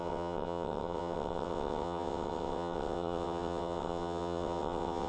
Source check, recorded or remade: remade